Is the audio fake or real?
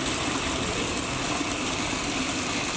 real